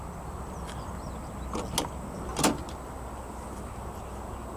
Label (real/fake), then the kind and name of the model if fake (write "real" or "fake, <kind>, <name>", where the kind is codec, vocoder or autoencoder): real